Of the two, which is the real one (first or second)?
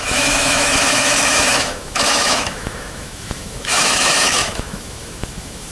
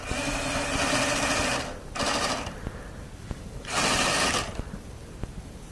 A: second